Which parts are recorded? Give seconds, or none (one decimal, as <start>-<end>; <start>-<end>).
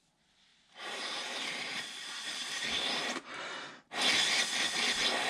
0.0-0.5; 3.7-5.3